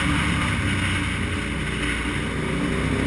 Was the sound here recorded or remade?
recorded